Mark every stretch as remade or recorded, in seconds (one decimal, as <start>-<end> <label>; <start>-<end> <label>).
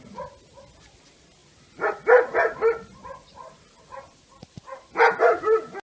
0.0-5.8 recorded